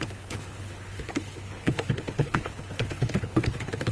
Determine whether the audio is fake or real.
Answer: fake